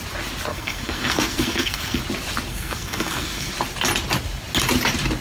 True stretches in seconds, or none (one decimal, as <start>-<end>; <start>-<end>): 0.0-0.5; 2.0-2.5; 3.5-5.2